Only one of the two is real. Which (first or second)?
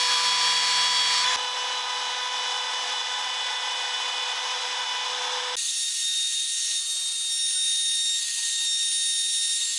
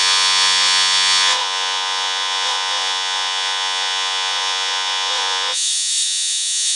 first